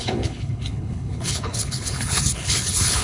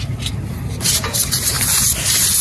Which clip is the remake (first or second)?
first